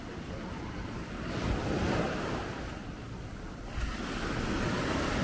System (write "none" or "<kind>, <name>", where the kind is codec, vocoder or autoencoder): none